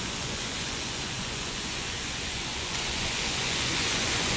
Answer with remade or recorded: remade